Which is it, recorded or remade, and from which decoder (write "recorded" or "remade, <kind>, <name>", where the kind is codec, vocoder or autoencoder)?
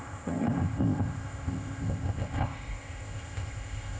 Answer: remade, codec, ZipCodec